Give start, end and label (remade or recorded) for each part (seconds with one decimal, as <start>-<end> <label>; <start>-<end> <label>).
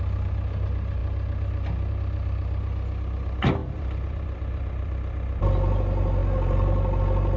0.0-3.6 recorded; 3.6-5.4 remade; 5.4-7.4 recorded